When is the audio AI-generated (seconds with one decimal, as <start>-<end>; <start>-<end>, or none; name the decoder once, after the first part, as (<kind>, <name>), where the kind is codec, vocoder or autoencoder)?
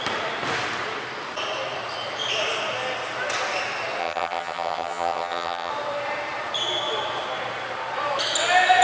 4.0-5.7 (vocoder, HiFi-GAN)